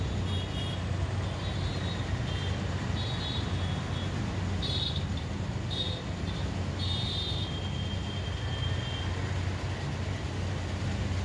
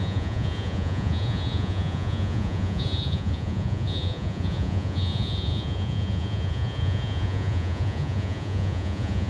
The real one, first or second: first